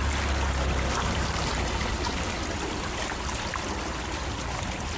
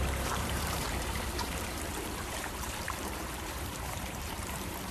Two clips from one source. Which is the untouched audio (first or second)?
first